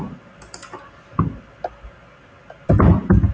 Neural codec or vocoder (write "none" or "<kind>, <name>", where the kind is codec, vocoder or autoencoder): none